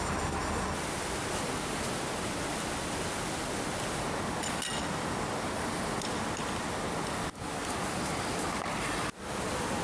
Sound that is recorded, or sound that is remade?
recorded